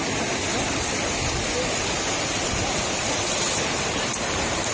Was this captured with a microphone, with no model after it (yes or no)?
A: yes